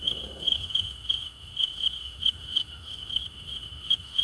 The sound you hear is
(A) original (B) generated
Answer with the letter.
B